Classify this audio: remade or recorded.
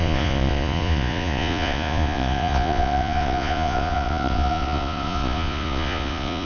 remade